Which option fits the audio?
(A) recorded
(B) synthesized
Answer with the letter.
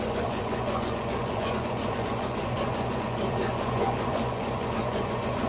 B